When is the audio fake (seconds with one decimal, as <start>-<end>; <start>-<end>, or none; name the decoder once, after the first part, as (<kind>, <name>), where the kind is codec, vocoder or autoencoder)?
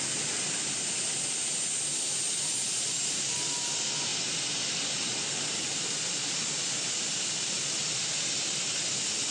none